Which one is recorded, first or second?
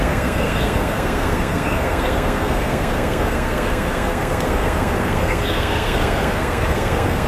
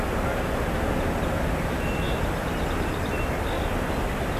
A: second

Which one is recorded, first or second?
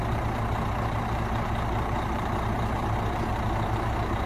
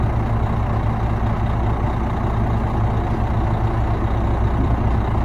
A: second